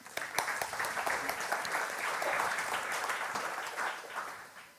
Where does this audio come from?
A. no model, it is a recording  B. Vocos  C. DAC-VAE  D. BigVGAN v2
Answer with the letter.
D